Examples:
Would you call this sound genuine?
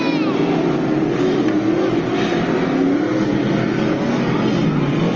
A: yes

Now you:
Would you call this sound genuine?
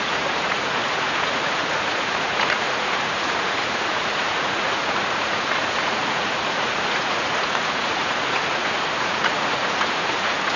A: no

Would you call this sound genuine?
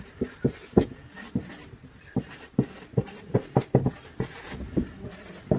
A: yes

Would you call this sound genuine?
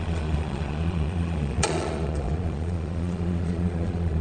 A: no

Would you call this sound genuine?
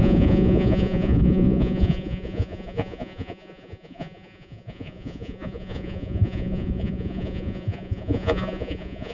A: no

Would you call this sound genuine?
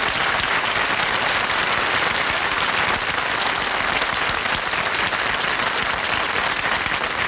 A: yes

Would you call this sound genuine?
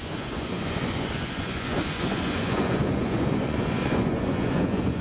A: no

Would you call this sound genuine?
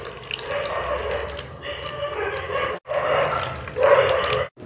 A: yes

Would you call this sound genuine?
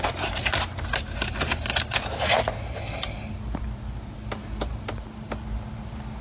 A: yes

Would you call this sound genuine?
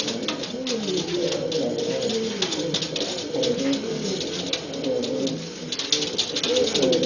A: yes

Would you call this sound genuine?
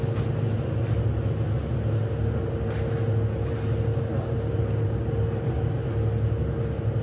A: yes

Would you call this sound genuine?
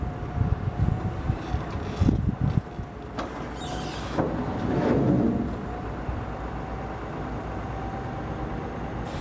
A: yes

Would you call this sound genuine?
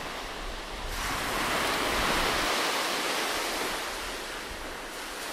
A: yes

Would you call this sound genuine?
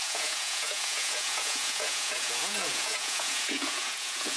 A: no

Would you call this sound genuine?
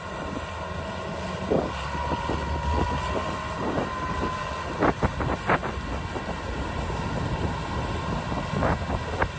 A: yes